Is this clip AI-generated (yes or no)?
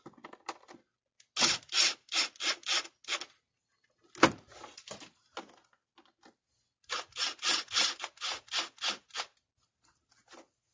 no